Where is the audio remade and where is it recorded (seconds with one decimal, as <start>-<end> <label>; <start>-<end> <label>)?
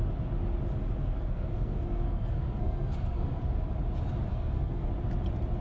0.0-1.0 recorded; 1.0-3.4 remade; 3.4-4.3 recorded; 4.3-4.9 remade; 4.9-5.6 recorded